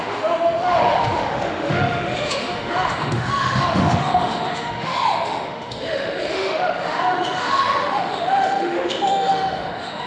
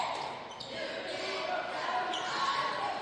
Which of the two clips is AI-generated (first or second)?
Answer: first